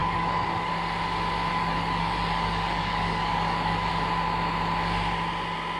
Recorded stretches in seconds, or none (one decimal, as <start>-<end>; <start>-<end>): 0.7-1.5; 3.9-5.8